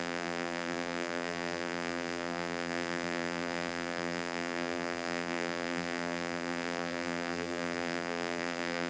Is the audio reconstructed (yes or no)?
yes